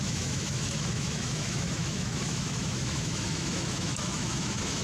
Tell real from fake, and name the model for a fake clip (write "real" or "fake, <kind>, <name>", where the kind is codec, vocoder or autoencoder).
fake, autoencoder, DAC-VAE